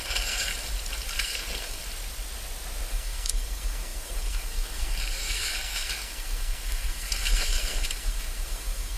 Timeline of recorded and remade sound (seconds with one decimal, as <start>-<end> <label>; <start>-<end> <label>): 0.0-0.5 remade; 0.5-1.2 recorded; 1.2-1.8 remade; 1.8-2.9 recorded; 2.9-9.0 remade